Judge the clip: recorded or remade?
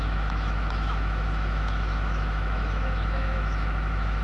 remade